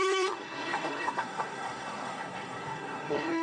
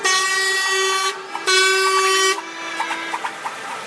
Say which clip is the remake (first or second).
first